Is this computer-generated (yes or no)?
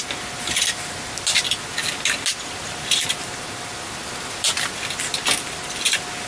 no